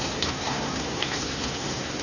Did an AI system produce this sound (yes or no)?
yes